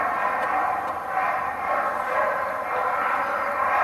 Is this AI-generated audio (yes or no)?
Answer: no